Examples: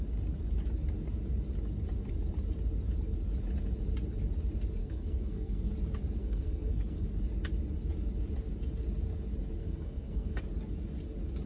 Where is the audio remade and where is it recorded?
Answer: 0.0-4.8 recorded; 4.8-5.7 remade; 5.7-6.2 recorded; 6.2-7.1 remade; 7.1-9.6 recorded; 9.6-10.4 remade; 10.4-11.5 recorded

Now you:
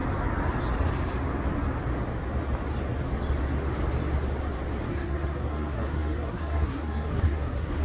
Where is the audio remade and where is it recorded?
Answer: 0.0-4.9 recorded; 4.9-7.8 remade

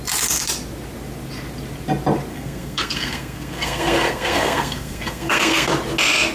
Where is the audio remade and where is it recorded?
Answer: 0.0-2.3 recorded; 2.3-5.7 remade; 5.7-6.3 recorded

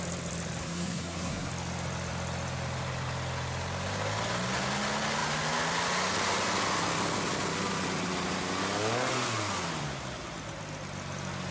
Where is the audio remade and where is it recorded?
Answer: 0.0-0.6 recorded; 0.6-1.5 remade; 1.5-11.5 recorded

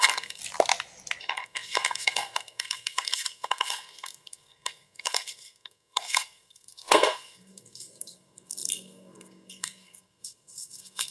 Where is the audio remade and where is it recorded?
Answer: 0.0-0.4 remade; 0.4-1.2 recorded; 1.2-11.1 remade

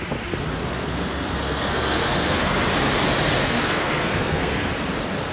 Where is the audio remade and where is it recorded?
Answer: 0.0-0.6 recorded; 0.6-2.6 remade; 2.6-3.4 recorded; 3.4-4.7 remade; 4.7-5.3 recorded